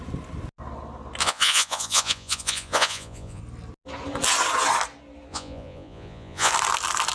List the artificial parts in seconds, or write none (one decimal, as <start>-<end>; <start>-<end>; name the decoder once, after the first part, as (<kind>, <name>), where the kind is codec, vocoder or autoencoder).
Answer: 1.2-3.4 (vocoder, Vocos); 5.3-6.5